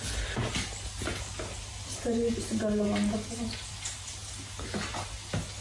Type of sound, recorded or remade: recorded